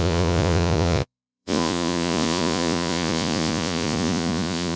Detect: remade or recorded remade